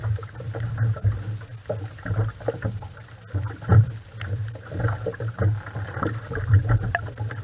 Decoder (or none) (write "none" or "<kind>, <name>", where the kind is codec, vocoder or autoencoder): none